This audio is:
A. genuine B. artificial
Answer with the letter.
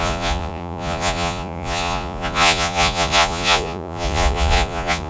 B